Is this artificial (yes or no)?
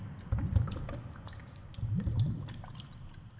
no